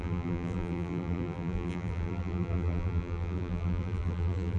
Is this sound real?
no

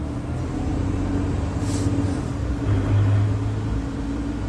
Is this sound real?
yes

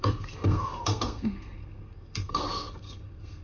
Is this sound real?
no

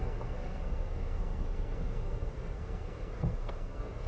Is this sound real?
no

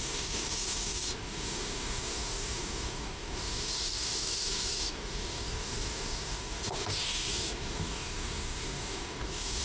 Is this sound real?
no